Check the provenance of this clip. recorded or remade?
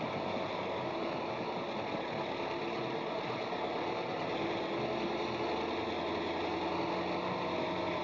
recorded